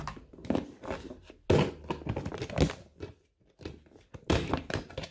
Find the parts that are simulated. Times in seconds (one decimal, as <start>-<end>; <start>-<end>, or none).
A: 0.0-1.2; 4.3-5.1